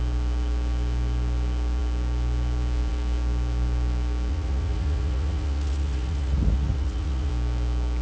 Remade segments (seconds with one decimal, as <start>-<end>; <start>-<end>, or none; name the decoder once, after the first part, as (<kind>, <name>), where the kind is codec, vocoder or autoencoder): 4.3-7.3 (vocoder, Vocos)